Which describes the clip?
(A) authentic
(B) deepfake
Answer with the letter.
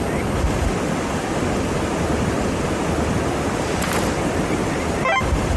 A